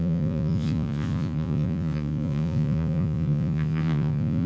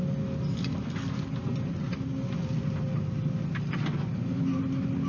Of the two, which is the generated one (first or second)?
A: first